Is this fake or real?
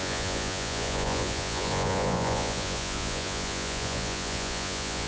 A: fake